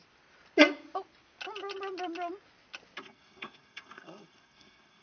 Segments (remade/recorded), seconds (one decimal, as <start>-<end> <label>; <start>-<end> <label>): 0.0-3.0 recorded; 3.0-5.0 remade